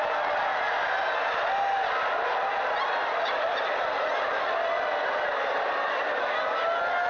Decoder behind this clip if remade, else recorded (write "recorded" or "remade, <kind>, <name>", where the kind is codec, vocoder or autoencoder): recorded